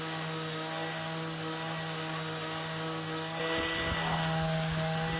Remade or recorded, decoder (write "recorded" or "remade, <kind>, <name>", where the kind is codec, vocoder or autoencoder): recorded